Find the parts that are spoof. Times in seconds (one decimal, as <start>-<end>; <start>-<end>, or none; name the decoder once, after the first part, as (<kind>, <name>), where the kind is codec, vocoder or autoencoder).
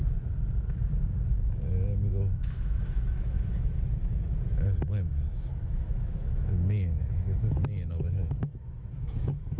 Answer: 2.1-9.6 (autoencoder, DAC-VAE)